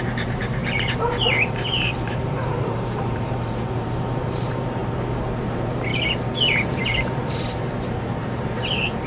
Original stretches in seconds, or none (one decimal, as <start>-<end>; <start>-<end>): 5.9-6.7

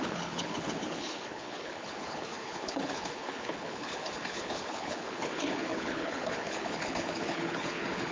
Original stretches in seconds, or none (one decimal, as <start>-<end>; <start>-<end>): none

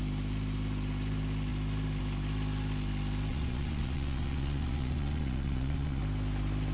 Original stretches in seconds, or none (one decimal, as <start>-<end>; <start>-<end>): 0.0-3.3; 6.0-6.7

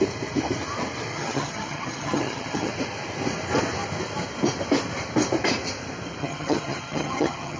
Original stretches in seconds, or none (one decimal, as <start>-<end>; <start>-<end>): 0.0-1.1; 2.7-6.2

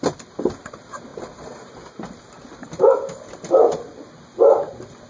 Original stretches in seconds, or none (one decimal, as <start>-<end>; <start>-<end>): 0.0-5.1

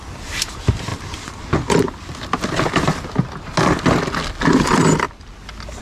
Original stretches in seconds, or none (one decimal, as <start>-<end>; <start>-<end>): 0.0-5.8